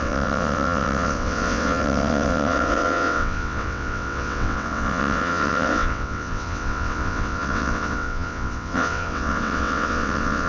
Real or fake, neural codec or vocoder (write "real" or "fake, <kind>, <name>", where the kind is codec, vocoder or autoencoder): fake, vocoder, WaveNeXt